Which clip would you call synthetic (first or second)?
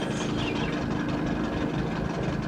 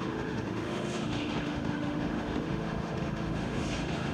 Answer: second